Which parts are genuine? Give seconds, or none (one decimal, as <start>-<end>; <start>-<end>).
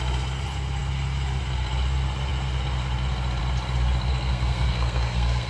0.0-4.1